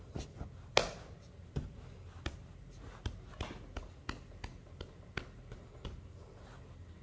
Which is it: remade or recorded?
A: recorded